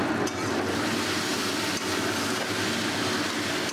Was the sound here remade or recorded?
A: recorded